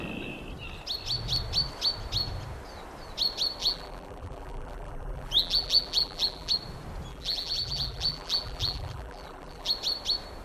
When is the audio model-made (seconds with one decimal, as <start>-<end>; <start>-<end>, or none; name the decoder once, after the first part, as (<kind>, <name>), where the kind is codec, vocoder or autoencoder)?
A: 3.6-6.5 (vocoder, BigVGAN v2); 7.1-9.7

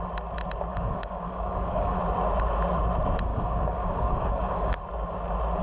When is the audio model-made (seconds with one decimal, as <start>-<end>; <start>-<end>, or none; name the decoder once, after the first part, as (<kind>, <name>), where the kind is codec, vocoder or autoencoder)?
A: 0.7-2.0 (codec, DAC); 3.3-4.8

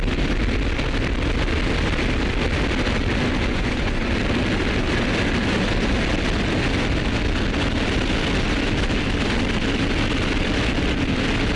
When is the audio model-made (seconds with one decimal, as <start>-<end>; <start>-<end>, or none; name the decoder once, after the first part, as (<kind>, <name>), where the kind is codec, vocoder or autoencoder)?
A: 3.5-4.1 (vocoder, Vocos)

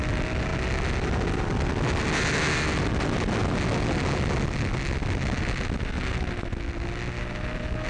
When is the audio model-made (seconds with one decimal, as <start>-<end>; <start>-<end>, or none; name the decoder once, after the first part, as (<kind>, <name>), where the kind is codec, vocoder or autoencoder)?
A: none

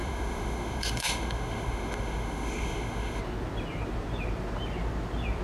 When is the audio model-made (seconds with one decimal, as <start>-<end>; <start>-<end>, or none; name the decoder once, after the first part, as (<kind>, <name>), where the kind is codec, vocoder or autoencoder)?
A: 0.0-3.2 (autoencoder, DAC-VAE)